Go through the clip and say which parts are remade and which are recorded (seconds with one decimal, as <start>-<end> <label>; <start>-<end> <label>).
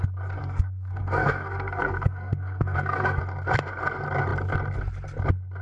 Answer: 0.0-0.4 recorded; 0.4-3.2 remade; 3.2-5.6 recorded